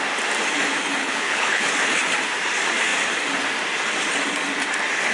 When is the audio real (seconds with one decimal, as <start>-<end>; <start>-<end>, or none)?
0.0-1.0; 1.7-5.1